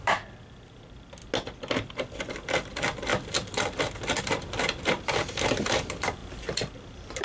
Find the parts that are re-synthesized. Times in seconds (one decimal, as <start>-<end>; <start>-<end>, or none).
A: 0.0-1.2; 1.9-3.1; 4.2-7.2